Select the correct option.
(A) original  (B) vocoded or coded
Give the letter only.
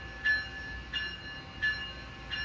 A